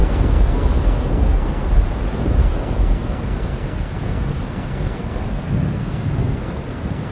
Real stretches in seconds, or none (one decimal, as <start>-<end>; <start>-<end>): 1.7-2.4